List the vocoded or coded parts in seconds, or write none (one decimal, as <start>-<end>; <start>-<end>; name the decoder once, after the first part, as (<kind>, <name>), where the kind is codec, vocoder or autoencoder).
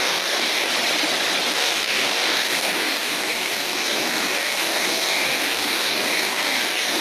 0.0-0.7 (codec, DAC); 1.5-7.0